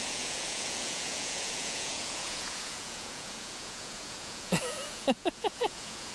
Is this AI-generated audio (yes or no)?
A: yes